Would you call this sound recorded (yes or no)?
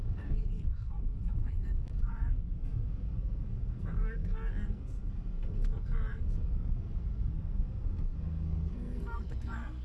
no